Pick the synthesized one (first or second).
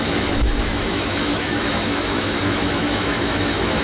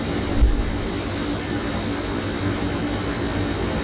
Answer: first